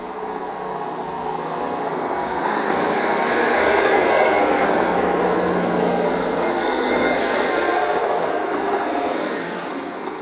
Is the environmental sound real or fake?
fake